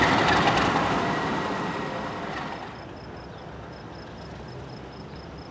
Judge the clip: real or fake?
real